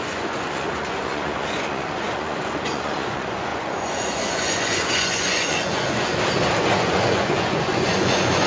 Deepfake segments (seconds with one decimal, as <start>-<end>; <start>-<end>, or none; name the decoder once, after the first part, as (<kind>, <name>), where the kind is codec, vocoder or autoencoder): 0.0-6.1 (vocoder, Vocos); 6.6-8.5